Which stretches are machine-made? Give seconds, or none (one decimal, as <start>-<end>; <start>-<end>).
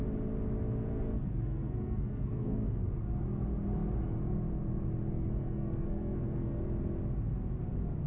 0.9-2.9; 5.1-6.6